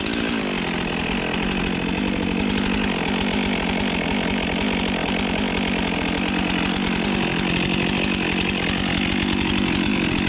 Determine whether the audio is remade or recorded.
recorded